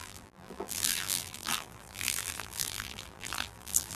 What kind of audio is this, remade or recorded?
remade